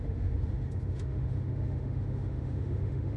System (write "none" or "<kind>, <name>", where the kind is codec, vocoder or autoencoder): autoencoder, DAC-VAE